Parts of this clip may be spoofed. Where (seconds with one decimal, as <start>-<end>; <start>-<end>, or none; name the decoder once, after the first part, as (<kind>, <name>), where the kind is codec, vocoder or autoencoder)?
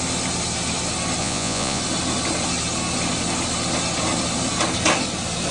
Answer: 1.2-1.8 (vocoder, Vocos)